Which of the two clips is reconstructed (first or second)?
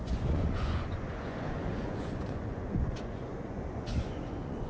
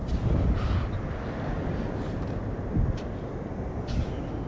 first